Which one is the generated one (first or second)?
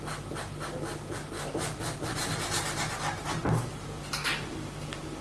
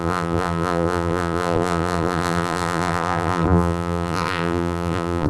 second